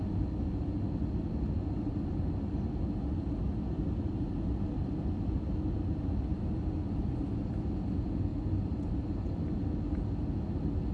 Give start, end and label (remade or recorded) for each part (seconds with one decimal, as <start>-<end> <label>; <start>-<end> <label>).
0.0-10.9 recorded